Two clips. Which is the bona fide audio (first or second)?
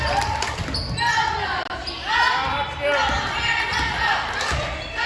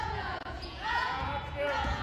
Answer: first